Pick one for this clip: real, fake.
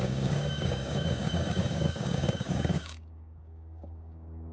fake